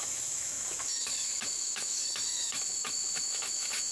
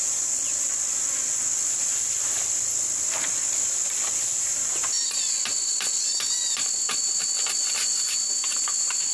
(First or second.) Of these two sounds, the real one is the second